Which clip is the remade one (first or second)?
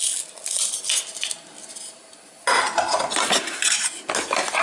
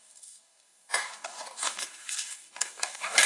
second